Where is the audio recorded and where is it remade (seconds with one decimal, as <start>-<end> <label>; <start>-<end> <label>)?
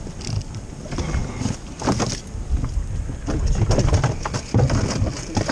0.0-5.5 recorded